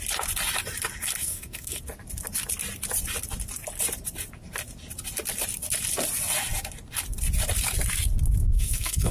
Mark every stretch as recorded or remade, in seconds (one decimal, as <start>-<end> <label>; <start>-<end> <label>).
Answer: 0.0-1.2 recorded; 1.2-1.8 remade; 1.8-8.4 recorded; 8.4-9.1 remade